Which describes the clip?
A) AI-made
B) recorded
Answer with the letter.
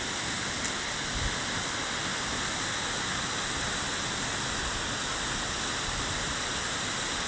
B